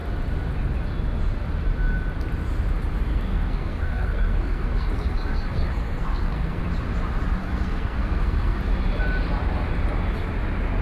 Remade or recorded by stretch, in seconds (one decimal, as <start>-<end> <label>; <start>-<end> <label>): 0.0-3.1 recorded; 3.1-6.6 remade; 6.6-7.4 recorded; 7.4-8.6 remade; 8.6-10.8 recorded